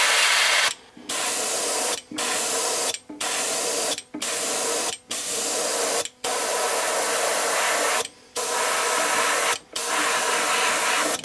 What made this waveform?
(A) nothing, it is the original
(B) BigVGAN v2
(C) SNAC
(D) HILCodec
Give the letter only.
A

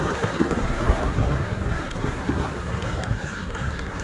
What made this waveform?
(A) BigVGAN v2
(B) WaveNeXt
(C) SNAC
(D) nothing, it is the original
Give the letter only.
C